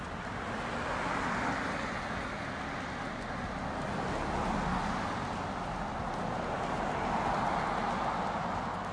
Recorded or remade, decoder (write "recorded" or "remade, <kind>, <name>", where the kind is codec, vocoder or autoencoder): recorded